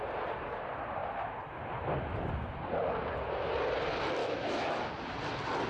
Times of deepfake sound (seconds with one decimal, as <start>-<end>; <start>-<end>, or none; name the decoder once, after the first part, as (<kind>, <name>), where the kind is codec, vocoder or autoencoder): 4.2-4.8 (autoencoder, DAC-VAE)